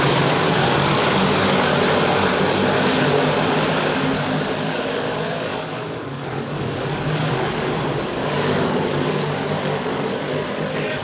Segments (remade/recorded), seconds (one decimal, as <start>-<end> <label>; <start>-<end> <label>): 0.0-1.7 remade; 1.7-3.7 recorded; 3.7-11.0 remade